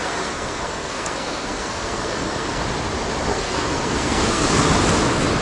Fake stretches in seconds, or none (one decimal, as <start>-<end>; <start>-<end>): 0.0-2.6; 3.3-4.6